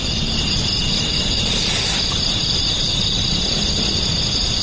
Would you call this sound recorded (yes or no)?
yes